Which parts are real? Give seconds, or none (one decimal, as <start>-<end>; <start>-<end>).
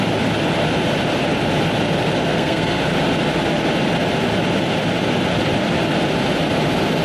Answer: 0.0-2.3; 2.8-7.0